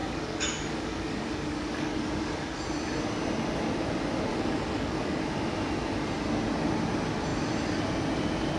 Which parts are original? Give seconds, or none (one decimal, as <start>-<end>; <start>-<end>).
2.6-4.3; 5.2-8.6